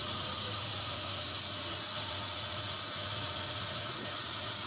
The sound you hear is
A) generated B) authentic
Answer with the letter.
A